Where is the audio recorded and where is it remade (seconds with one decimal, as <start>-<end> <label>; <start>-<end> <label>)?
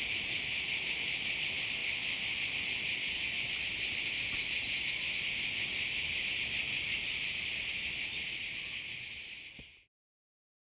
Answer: 0.0-10.6 recorded